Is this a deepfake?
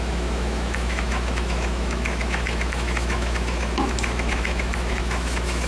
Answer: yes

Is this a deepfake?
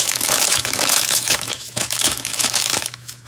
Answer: yes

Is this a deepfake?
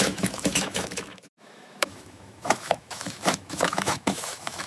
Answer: yes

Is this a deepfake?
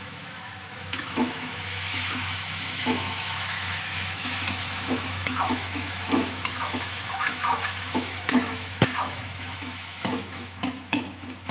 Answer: yes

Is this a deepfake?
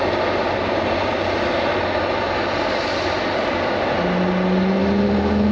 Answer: no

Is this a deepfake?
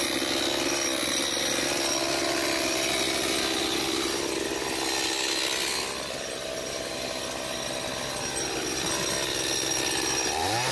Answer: no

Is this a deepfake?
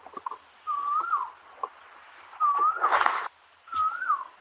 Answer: no